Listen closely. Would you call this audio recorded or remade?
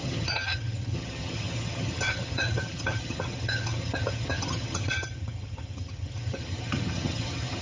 remade